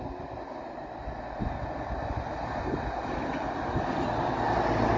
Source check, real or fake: real